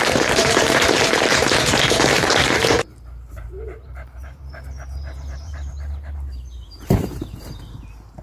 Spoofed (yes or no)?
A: yes